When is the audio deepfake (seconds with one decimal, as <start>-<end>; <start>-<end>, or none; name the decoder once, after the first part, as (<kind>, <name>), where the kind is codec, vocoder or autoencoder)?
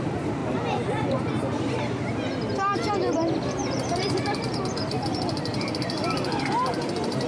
0.0-0.4 (vocoder, BigVGAN v2); 2.9-7.3